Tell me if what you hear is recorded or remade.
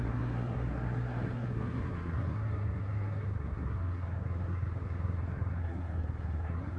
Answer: remade